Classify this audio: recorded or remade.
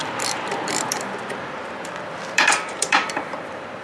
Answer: remade